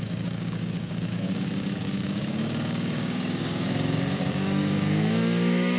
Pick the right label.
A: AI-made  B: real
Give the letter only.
A